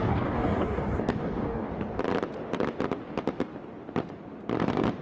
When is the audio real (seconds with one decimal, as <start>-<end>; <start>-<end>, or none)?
1.7-5.0